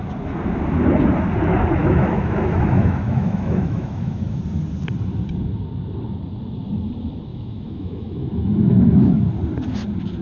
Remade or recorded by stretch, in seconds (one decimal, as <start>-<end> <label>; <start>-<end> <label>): 0.0-1.8 recorded; 1.8-4.4 remade; 4.4-7.3 recorded; 7.3-9.3 remade; 9.3-10.2 recorded